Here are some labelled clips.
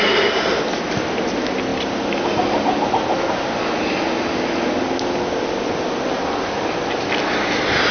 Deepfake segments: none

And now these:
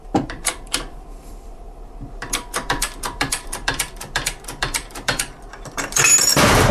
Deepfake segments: 0.0-6.7

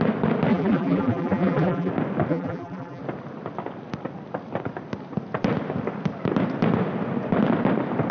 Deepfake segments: 0.5-1.9; 2.3-3.0

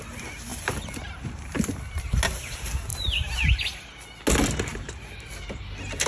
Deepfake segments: 0.5-1.3; 4.7-5.3